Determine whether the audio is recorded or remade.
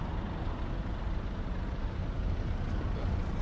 recorded